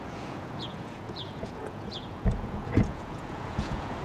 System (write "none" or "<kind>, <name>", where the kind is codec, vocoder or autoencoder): vocoder, Vocos